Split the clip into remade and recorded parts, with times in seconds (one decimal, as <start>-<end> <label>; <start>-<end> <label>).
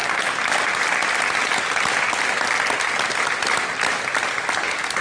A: 0.0-5.0 recorded